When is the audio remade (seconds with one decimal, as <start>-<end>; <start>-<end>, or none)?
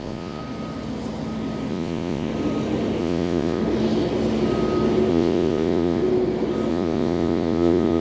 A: 0.0-0.4; 1.7-2.3; 3.0-3.6; 5.1-6.0; 6.7-8.0